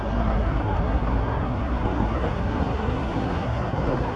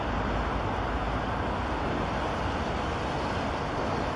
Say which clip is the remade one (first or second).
first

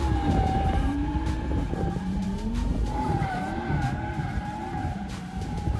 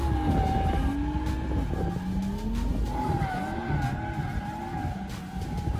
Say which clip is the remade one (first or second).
first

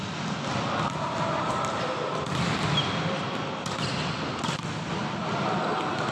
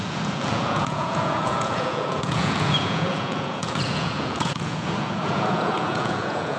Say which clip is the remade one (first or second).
second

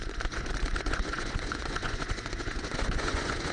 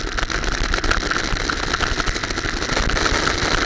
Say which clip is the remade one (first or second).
first